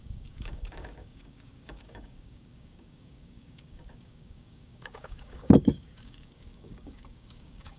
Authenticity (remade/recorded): remade